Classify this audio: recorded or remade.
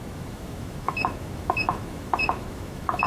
remade